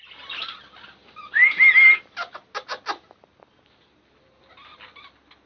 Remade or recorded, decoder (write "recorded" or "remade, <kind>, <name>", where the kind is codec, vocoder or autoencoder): recorded